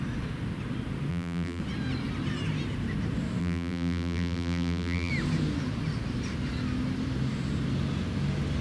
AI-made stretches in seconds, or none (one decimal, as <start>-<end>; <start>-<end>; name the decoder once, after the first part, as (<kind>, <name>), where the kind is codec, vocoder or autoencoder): 1.1-1.6 (vocoder, BigVGAN v2); 3.4-5.1

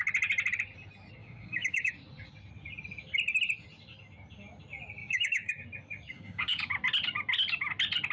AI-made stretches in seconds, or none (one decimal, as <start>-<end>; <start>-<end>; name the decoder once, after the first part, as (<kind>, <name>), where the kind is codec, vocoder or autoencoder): 1.2-1.9 (codec, DAC); 5.0-5.5; 6.1-6.7

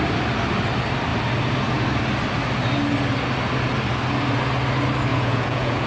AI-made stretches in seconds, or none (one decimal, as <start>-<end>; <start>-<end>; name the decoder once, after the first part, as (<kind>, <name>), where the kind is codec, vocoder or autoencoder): 5.1-5.9 (vocoder, Vocos)

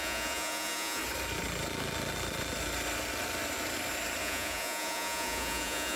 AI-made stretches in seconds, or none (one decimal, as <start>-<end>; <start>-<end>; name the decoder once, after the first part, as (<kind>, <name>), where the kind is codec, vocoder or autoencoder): 0.0-1.0 (vocoder, Vocos); 4.2-6.0

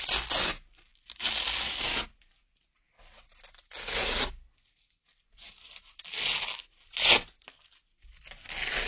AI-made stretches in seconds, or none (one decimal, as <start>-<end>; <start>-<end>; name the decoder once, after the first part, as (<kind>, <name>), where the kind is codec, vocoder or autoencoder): 0.9-2.3 (vocoder, BigVGAN v2)